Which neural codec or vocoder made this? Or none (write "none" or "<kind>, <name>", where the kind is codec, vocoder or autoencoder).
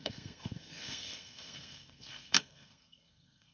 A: codec, SNAC